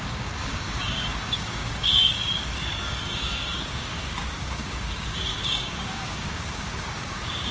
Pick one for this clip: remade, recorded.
remade